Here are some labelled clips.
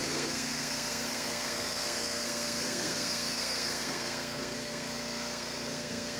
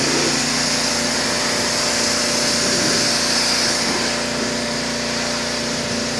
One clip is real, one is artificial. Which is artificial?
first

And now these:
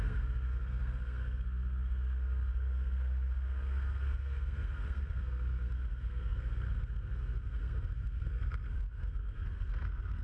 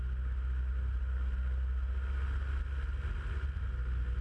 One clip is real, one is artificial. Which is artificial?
first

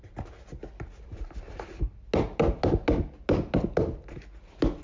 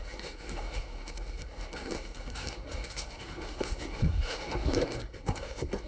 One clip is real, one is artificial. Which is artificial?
second